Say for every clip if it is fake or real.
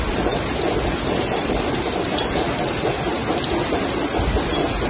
real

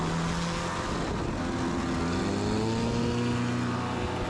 real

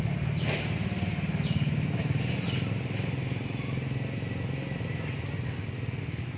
real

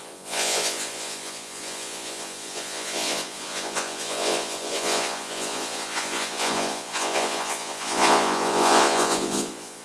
fake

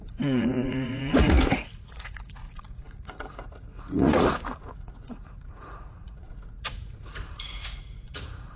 fake